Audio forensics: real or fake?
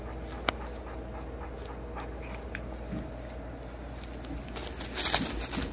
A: real